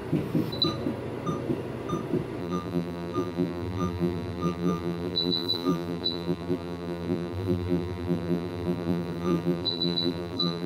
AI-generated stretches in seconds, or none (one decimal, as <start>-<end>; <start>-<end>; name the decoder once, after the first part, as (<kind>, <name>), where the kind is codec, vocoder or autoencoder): 2.4-10.7 (vocoder, BigVGAN v2)